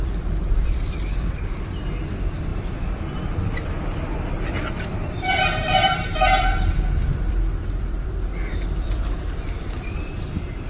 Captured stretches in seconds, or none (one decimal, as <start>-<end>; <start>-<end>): 2.5-4.7